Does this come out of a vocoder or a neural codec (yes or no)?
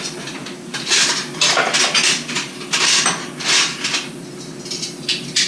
no